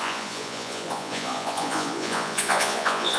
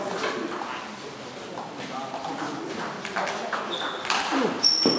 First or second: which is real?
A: second